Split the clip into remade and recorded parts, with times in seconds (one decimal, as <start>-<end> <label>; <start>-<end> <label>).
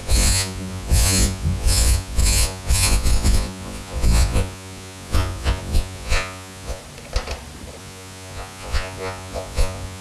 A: 0.0-6.8 remade; 6.8-7.8 recorded; 7.8-10.0 remade